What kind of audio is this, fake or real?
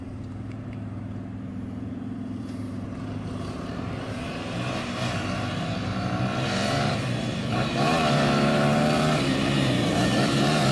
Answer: fake